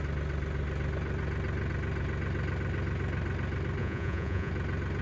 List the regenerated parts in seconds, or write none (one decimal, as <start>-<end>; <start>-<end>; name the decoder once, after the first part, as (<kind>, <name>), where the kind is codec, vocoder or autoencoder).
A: 3.8-4.5 (vocoder, Vocos)